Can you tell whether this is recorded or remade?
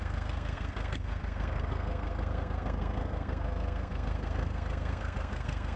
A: remade